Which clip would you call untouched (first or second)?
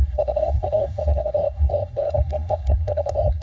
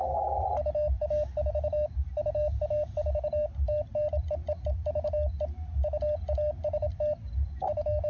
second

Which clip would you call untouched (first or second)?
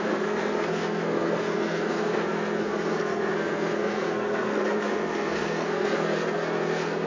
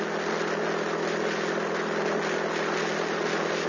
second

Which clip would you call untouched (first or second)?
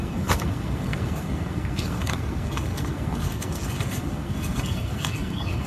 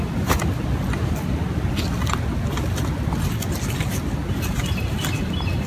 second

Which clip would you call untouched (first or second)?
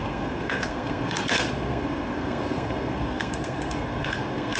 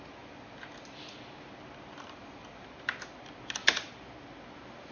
second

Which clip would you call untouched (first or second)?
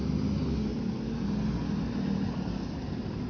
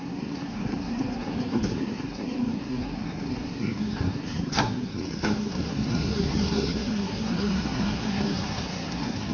first